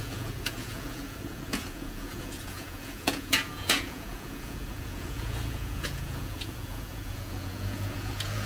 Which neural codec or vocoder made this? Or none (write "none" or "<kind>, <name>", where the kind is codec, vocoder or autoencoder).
vocoder, Vocos